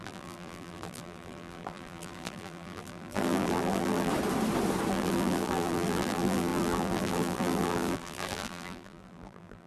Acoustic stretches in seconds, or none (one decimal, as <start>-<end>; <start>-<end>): 4.1-4.9